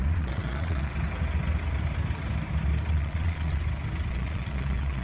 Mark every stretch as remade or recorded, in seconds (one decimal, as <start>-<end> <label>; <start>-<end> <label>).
0.0-0.9 remade; 0.9-2.9 recorded; 2.9-3.6 remade; 3.6-4.1 recorded; 4.1-5.0 remade